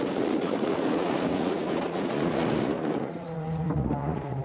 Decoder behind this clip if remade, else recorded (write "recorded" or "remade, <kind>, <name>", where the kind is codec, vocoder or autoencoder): remade, vocoder, Vocos